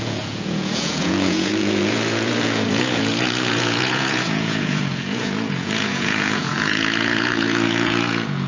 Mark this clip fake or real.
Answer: fake